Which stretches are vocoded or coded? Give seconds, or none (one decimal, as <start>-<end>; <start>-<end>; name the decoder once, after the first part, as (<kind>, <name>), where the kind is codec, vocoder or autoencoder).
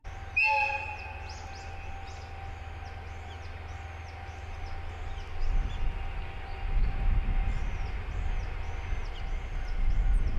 none